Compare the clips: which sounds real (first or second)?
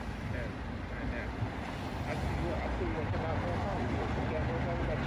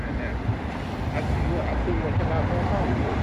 first